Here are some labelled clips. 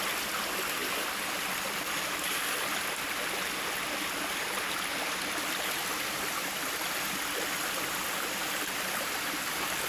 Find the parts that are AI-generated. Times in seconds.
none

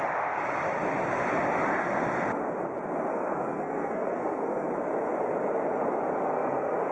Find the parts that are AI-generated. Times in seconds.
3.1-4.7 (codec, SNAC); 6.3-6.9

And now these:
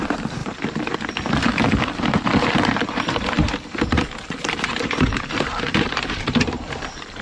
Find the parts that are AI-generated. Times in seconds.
0.0-0.4 (vocoder, BigVGAN v2); 1.8-7.2

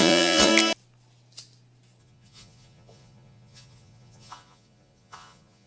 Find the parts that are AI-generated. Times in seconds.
0.0-0.5 (vocoder, Vocos); 2.0-5.7

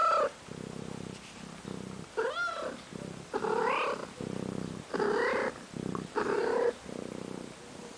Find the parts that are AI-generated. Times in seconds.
none